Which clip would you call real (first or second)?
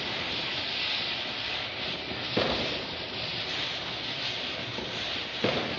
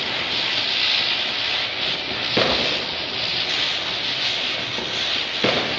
second